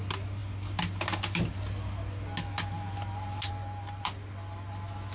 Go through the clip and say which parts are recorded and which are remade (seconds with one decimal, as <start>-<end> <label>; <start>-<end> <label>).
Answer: 0.0-5.1 recorded